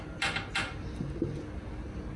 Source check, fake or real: real